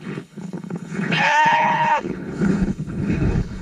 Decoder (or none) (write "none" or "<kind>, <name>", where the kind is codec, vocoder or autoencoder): codec, HILCodec